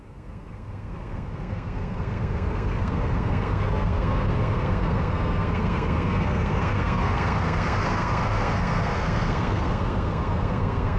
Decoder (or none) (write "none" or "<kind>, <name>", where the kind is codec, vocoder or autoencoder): codec, SNAC